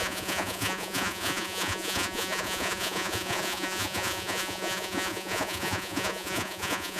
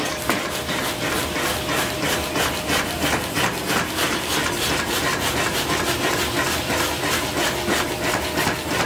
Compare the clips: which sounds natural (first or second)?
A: second